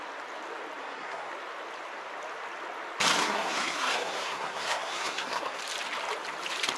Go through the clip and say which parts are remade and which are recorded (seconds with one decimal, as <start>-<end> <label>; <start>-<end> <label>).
0.0-0.8 recorded; 0.8-1.3 remade; 1.3-3.2 recorded; 3.2-5.6 remade; 5.6-6.8 recorded